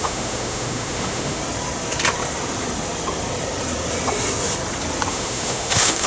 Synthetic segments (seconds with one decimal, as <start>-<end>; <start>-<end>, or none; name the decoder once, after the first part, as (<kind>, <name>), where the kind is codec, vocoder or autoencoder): 0.0-1.4 (autoencoder, DAC-VAE); 5.1-6.1